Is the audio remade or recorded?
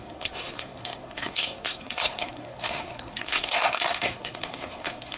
remade